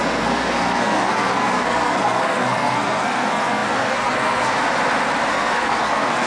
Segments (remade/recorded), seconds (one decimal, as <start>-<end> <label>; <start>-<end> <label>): 0.0-4.5 remade; 4.5-5.3 recorded; 5.3-6.3 remade